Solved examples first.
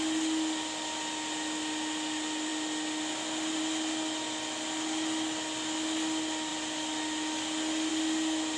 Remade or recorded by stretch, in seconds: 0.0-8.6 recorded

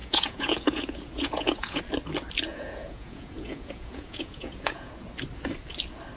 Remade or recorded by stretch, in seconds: 0.0-1.8 remade; 1.8-2.5 recorded; 2.5-4.9 remade; 4.9-6.2 recorded

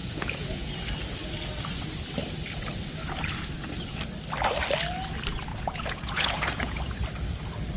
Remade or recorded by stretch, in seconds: 0.0-0.7 remade; 0.7-5.5 recorded; 5.5-6.8 remade; 6.8-7.8 recorded

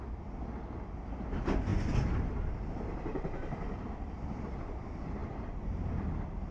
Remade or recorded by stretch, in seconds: 0.0-6.5 recorded

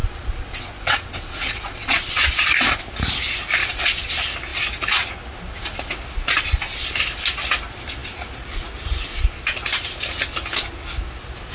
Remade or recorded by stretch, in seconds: 0.0-2.8 remade; 2.8-3.6 recorded; 3.6-4.1 remade; 4.1-11.5 recorded

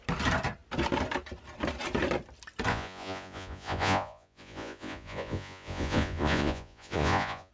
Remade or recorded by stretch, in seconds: 0.0-2.7 recorded; 2.7-7.5 remade

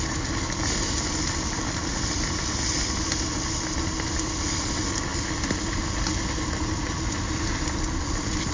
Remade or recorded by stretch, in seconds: 0.0-8.5 recorded

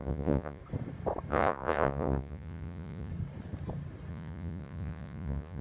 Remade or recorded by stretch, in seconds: 0.0-0.6 remade; 0.6-1.3 recorded; 1.3-3.1 remade; 3.1-4.1 recorded; 4.1-5.6 remade